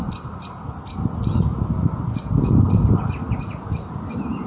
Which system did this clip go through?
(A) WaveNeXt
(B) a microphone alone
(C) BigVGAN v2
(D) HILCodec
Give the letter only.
B